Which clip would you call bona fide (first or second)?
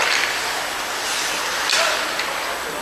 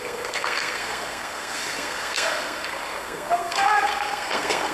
first